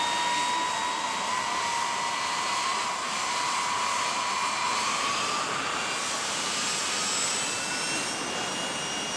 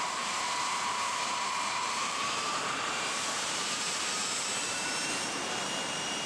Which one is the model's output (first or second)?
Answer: second